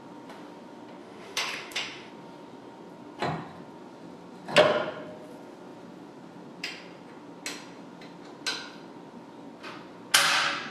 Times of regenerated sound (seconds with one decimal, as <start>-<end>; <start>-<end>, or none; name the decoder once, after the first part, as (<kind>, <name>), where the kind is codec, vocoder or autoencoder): 1.0-2.1 (autoencoder, DAC-VAE)